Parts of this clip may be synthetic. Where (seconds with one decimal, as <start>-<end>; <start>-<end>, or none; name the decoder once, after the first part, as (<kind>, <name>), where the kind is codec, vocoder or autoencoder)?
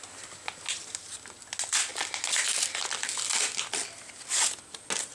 none